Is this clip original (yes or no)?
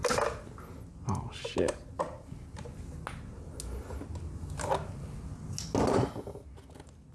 yes